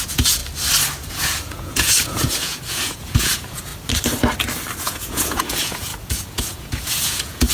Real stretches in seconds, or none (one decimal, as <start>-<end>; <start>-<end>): 0.4-1.1; 3.7-4.8